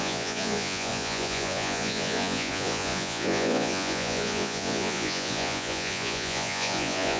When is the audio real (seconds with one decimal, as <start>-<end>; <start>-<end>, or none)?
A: none